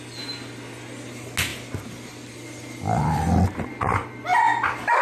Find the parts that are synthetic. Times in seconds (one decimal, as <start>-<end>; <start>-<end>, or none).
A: none